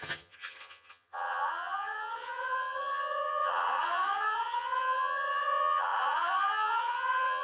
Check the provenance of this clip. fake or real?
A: fake